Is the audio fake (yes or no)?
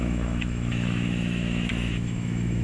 yes